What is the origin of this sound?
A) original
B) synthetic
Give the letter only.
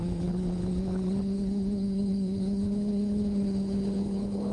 B